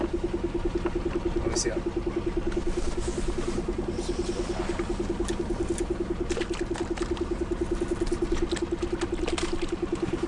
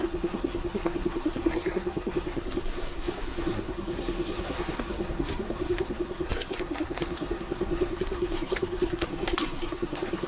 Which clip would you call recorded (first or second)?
first